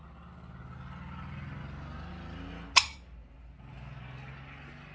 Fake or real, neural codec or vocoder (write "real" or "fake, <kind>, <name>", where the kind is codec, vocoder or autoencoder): real